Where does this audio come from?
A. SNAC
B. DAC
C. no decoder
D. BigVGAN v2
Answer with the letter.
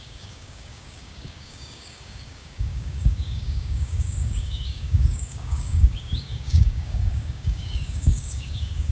B